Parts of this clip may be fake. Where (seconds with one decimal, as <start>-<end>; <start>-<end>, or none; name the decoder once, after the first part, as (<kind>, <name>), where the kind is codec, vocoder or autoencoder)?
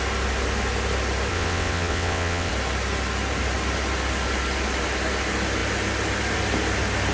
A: 1.3-2.5 (vocoder, WaveNeXt)